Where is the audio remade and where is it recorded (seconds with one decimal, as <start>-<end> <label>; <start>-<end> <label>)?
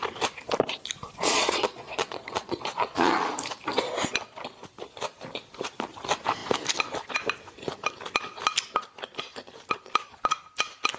0.0-1.0 recorded; 1.0-3.3 remade; 3.3-11.0 recorded